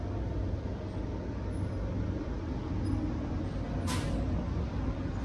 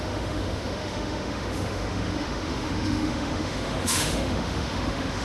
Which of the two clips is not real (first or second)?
second